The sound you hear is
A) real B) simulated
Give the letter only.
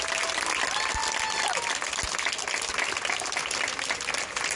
A